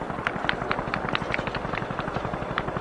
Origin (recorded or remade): recorded